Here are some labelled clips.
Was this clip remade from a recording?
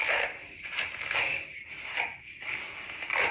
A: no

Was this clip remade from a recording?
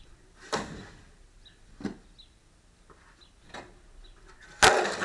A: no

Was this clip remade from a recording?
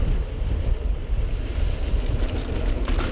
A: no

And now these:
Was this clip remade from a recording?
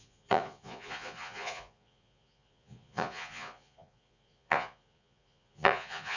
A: yes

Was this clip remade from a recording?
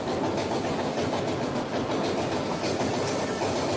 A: no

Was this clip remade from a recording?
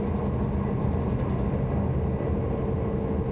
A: no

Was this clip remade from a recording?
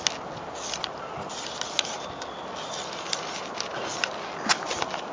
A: no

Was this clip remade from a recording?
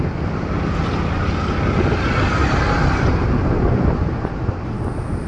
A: no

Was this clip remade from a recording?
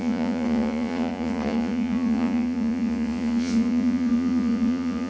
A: yes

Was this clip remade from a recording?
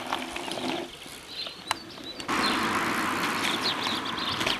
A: no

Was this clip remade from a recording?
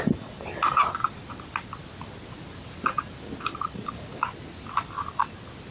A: no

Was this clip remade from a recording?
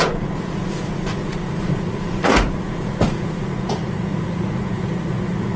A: yes